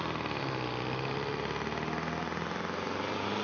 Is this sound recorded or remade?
recorded